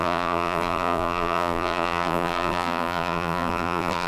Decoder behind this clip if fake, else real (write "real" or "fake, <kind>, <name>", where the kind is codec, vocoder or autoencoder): fake, vocoder, BigVGAN v2